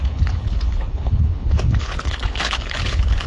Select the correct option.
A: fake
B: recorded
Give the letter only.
A